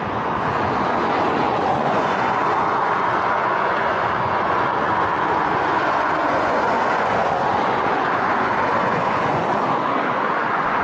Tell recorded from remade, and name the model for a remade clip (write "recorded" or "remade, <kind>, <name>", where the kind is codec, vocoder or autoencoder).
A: remade, vocoder, Vocos